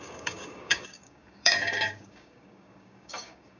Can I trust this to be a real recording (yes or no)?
no